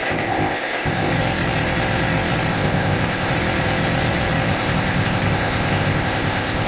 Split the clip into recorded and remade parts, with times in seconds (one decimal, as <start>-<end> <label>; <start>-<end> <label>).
0.0-1.1 remade; 1.1-2.5 recorded; 2.5-3.3 remade; 3.3-4.5 recorded; 4.5-6.7 remade